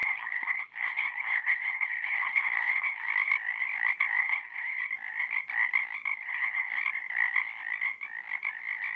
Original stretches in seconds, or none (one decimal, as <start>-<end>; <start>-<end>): 3.0-4.2; 4.9-6.1; 6.8-9.0